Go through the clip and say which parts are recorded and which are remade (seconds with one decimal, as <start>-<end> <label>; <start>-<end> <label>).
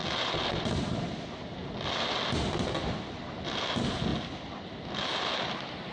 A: 0.0-5.9 recorded